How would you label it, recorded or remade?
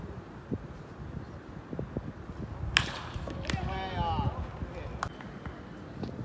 recorded